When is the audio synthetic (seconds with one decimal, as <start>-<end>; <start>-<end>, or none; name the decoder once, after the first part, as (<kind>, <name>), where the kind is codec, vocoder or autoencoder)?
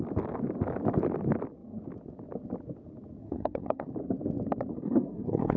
3.2-3.9 (codec, SNAC); 4.7-5.6